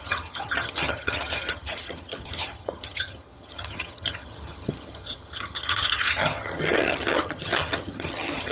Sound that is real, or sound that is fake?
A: fake